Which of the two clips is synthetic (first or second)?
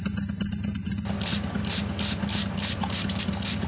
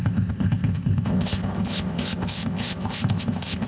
second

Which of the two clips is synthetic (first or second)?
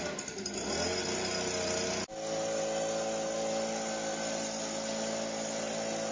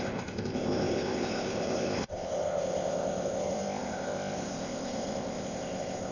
second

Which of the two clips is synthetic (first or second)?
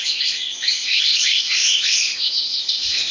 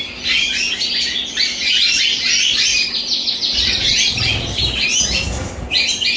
first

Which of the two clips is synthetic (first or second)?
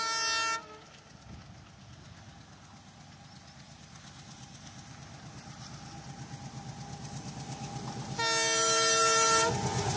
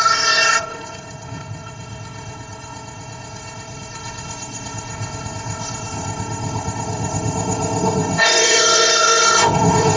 second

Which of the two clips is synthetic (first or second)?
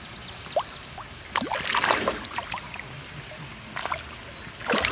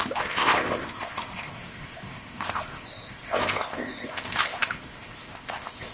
second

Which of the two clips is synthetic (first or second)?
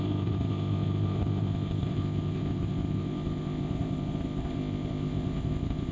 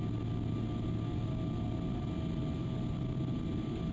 first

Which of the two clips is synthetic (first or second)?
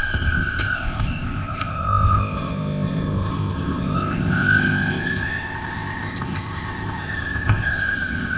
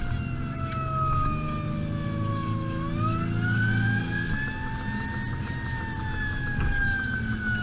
first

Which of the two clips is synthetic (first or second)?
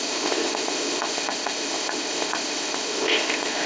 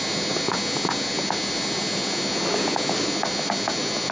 first